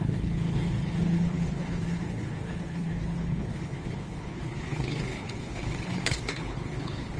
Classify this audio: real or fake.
fake